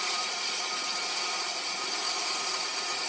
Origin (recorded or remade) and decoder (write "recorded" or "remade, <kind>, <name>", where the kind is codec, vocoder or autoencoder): remade, vocoder, Vocos